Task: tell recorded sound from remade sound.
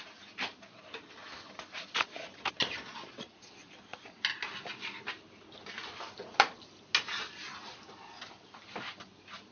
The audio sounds recorded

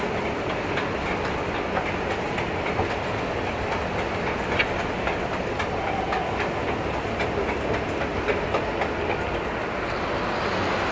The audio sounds recorded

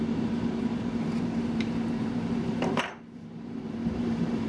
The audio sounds remade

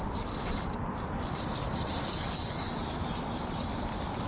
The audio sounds remade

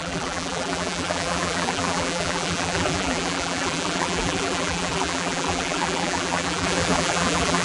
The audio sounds remade